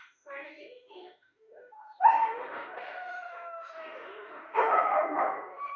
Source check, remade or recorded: remade